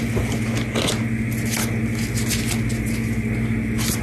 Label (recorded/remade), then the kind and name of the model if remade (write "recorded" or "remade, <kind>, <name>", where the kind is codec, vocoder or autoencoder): recorded